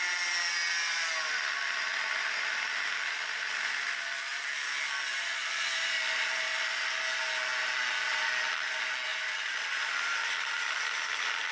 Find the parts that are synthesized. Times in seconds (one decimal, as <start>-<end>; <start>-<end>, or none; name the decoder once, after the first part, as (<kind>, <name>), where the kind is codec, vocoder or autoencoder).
1.9-3.4 (vocoder, BigVGAN v2); 5.0-6.8; 9.1-10.9